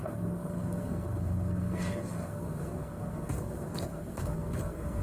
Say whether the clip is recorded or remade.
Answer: remade